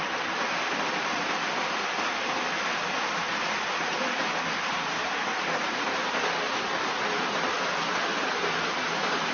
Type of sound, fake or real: real